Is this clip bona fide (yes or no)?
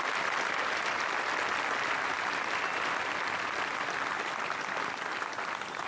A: yes